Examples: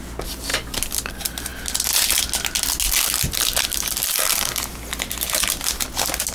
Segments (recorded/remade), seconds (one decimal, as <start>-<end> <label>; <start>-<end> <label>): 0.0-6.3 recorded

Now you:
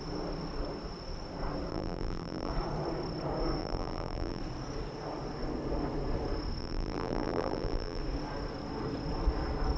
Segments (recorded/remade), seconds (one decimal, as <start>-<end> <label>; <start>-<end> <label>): 0.0-1.7 recorded; 1.7-2.5 remade; 2.5-3.6 recorded; 3.6-4.4 remade; 4.4-6.6 recorded; 6.6-8.0 remade; 8.0-9.8 recorded

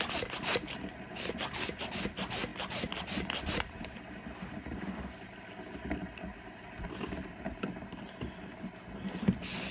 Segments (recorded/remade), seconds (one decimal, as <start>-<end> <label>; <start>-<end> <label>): 0.0-9.7 recorded